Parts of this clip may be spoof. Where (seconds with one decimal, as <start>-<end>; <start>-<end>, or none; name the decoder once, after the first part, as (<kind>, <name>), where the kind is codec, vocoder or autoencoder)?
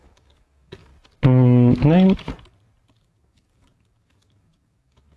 0.0-0.9 (codec, DAC); 3.0-5.2